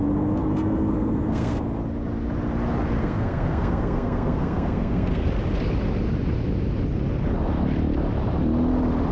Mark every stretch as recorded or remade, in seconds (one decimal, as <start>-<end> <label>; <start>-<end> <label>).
0.0-0.4 recorded; 0.4-1.6 remade; 1.6-3.0 recorded; 3.0-5.3 remade; 5.3-9.1 recorded